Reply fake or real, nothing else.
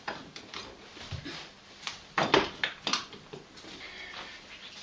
real